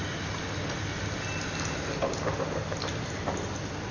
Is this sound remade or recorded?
recorded